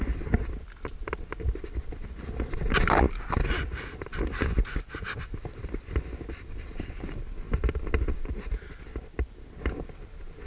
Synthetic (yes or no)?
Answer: no